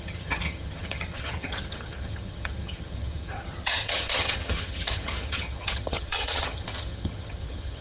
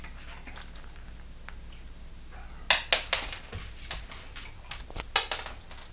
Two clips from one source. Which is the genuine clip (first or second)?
second